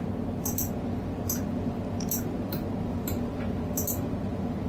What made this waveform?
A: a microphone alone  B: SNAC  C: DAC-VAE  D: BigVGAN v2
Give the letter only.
A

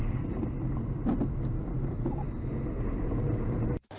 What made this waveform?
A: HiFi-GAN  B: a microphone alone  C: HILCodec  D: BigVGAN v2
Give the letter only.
B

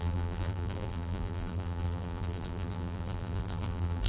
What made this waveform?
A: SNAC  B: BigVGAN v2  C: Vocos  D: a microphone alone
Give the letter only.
B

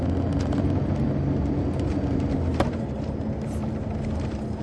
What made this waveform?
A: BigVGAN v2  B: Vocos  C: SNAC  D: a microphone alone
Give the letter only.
D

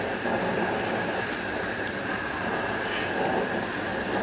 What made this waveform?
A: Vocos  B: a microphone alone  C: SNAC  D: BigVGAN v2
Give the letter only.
B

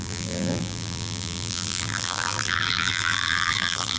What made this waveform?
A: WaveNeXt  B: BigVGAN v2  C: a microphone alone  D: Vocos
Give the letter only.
B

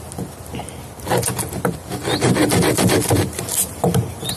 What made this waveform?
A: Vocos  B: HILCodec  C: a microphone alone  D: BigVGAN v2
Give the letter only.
C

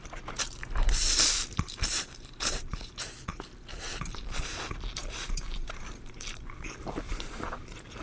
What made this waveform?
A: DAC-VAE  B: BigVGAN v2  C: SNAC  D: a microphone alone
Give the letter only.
B